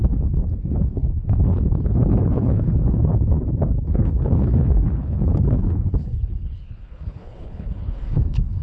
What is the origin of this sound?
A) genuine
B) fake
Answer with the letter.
B